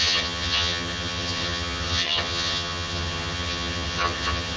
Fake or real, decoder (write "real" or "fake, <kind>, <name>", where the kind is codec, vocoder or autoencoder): fake, vocoder, HiFi-GAN